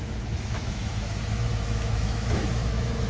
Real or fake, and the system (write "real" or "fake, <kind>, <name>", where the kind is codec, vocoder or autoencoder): fake, autoencoder, DAC-VAE